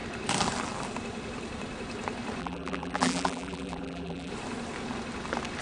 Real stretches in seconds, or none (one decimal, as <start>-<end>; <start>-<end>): 0.0-2.4; 4.3-5.6